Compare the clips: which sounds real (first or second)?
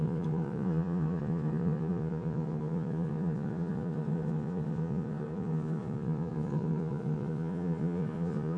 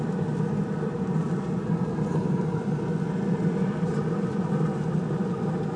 second